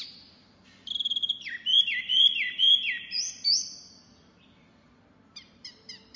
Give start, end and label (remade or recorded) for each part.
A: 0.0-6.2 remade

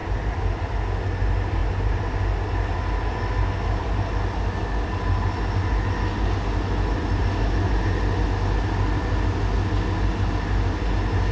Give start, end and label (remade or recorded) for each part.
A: 0.0-0.6 remade; 0.6-1.6 recorded; 1.6-2.2 remade; 2.2-11.3 recorded

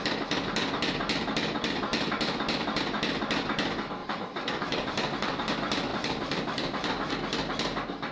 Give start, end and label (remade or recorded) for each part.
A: 0.0-1.9 recorded; 1.9-2.8 remade; 2.8-4.0 recorded; 4.0-5.5 remade; 5.5-5.9 recorded; 5.9-7.1 remade; 7.1-8.1 recorded

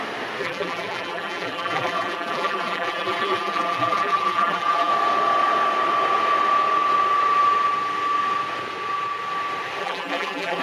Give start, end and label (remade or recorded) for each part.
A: 0.0-0.4 recorded; 0.4-4.9 remade; 4.9-9.8 recorded; 9.8-10.6 remade